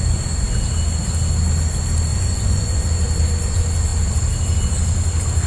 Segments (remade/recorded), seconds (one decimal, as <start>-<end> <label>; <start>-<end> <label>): 0.0-2.1 recorded; 2.1-2.8 remade; 2.8-5.5 recorded